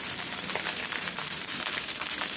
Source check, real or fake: fake